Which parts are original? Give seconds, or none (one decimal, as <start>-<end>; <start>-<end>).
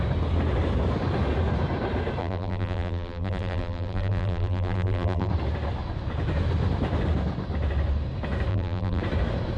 0.0-2.2; 5.3-8.5; 9.0-9.6